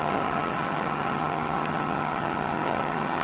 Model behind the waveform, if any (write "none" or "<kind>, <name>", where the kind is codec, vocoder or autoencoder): vocoder, HiFi-GAN